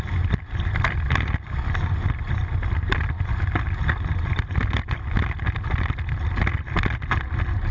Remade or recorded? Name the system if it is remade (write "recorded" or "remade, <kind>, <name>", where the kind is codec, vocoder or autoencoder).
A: recorded